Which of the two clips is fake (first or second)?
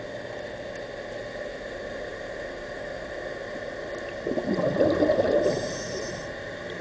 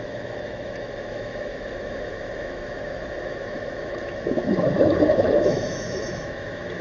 second